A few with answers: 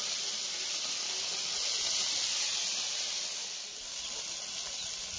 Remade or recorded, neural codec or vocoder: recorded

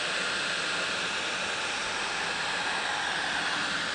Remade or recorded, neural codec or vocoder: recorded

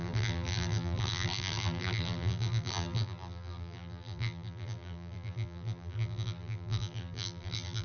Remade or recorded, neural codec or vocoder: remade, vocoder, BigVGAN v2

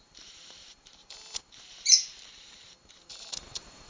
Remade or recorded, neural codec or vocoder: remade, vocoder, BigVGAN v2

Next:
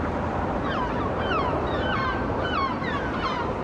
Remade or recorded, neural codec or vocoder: remade, vocoder, BigVGAN v2